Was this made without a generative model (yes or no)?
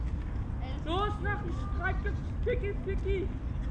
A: yes